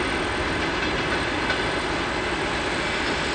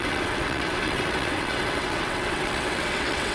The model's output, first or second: second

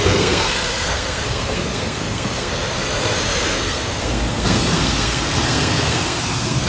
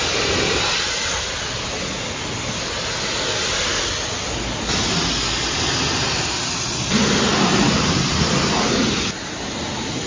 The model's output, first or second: first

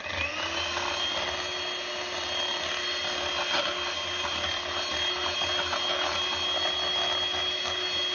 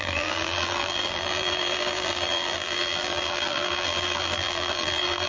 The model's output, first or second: second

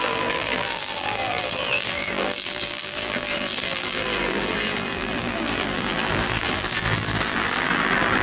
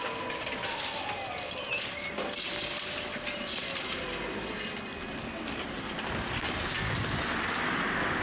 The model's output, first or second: first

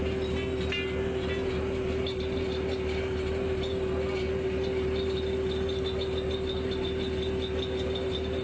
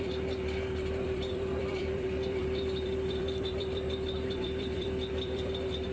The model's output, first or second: second